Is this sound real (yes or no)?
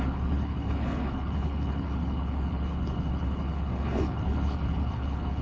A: no